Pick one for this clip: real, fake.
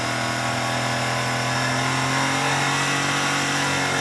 real